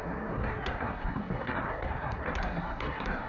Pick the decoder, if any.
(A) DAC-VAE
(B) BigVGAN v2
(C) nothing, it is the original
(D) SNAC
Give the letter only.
D